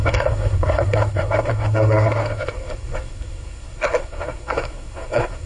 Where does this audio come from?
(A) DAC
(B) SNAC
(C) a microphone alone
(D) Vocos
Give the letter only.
B